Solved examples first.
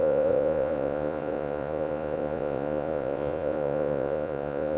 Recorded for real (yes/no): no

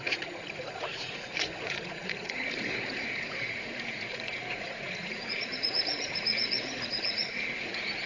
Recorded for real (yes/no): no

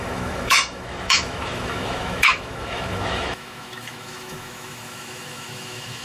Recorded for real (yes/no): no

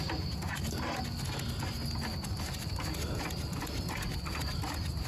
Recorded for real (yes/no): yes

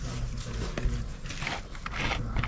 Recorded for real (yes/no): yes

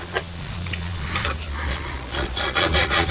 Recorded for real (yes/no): no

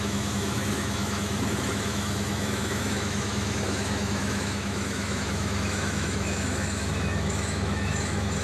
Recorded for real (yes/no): no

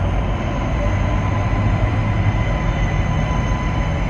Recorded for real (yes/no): yes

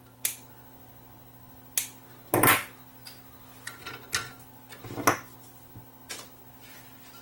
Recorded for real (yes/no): yes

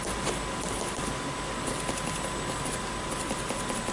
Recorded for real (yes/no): yes